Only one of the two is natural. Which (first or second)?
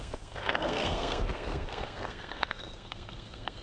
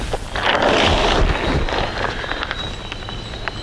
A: second